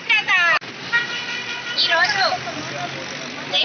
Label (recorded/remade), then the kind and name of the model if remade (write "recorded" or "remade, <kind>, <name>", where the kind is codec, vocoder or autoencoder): recorded